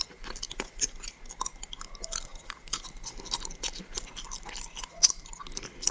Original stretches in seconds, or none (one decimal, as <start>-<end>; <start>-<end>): 0.0-5.9